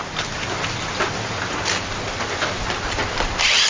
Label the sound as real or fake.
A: real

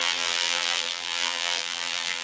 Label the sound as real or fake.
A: fake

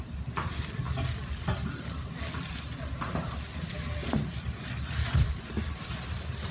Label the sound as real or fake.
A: real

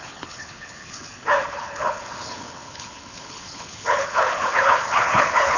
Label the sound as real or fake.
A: fake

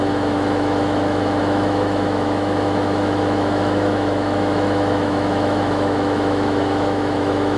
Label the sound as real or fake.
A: fake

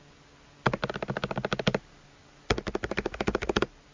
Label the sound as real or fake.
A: real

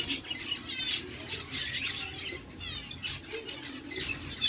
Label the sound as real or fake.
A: real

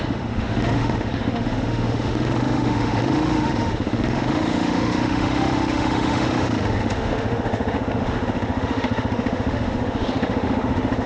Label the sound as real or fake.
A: fake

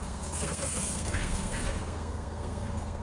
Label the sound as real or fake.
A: fake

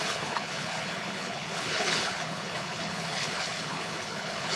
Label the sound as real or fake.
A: fake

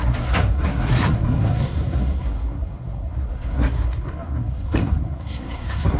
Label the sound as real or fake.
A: fake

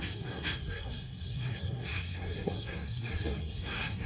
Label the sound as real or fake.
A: fake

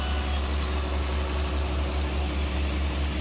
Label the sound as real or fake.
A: real